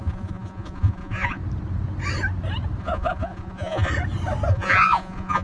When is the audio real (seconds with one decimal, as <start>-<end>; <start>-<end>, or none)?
1.4-2.8; 3.9-4.5